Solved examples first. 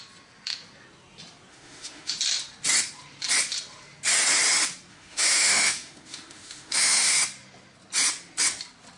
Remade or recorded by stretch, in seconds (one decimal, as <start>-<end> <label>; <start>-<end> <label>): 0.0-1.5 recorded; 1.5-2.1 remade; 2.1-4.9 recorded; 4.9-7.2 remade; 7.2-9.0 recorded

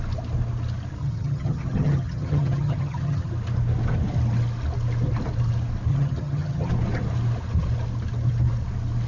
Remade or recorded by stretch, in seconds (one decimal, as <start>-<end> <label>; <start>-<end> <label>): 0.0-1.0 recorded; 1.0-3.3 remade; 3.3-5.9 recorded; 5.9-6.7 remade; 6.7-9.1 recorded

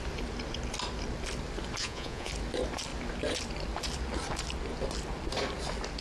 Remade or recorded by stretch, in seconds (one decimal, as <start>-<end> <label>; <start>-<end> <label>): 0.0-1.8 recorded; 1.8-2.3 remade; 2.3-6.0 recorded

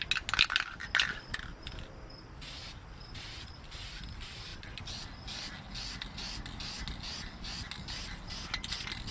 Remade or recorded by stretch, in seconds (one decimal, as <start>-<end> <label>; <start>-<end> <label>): 0.0-9.1 recorded